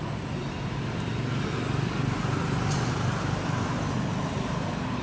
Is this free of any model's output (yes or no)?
yes